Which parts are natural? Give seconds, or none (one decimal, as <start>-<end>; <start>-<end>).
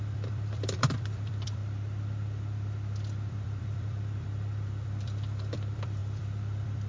1.6-3.3